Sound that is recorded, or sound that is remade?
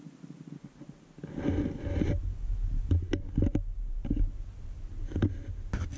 recorded